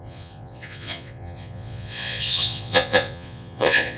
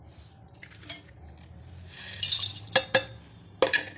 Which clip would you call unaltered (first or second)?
second